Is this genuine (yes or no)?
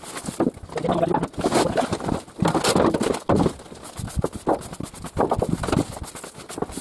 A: yes